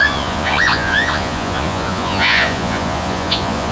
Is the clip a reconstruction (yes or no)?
yes